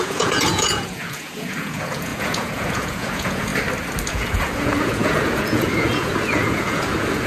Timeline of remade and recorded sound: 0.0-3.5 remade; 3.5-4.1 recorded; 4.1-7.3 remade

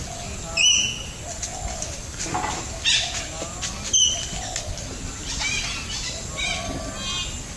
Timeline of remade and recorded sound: 0.0-7.6 recorded